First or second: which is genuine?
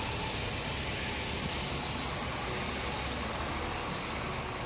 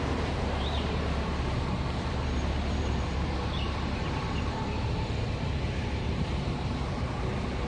first